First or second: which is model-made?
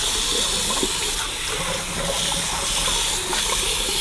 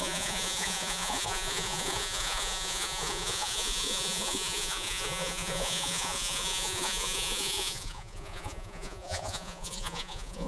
second